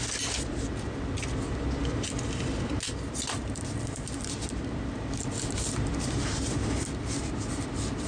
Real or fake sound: real